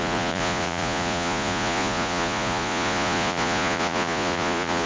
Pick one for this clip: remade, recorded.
remade